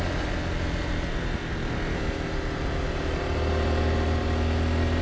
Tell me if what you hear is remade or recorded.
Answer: recorded